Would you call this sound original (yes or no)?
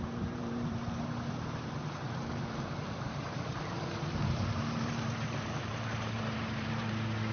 no